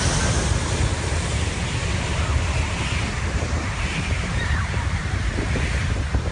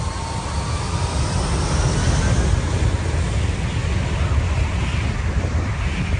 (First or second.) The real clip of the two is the second